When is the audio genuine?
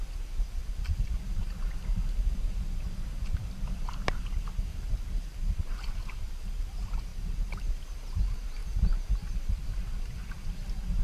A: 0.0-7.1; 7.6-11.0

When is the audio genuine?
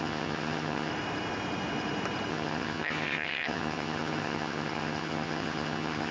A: 0.9-2.3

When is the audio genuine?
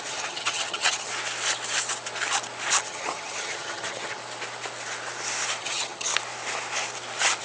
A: 1.1-2.8; 4.2-5.6; 6.1-7.4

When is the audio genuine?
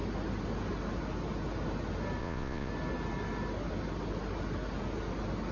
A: 0.0-2.2; 2.7-5.5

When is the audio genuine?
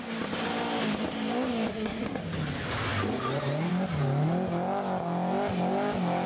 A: 0.0-1.7; 2.2-6.3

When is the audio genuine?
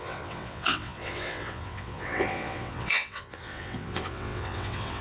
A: none